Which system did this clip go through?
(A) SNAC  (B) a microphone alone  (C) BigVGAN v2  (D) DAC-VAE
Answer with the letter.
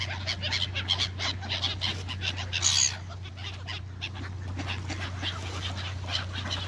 B